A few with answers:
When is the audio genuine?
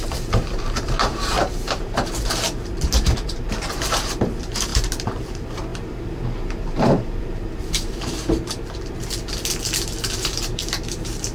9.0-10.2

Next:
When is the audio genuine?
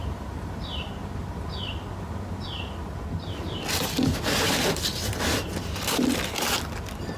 0.9-7.2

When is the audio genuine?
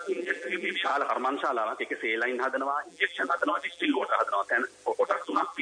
0.9-2.9; 4.1-5.0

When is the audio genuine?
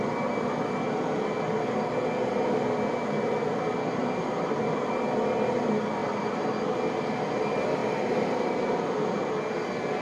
0.0-4.0; 4.6-6.0; 6.5-7.8; 8.8-10.0